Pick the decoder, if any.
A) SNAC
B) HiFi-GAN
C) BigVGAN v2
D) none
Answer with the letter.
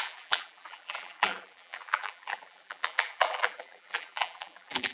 C